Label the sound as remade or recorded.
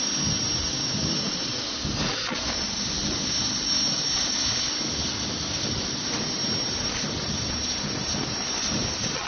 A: recorded